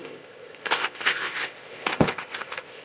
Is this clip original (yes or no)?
no